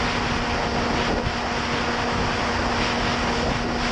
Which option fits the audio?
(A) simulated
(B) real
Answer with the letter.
B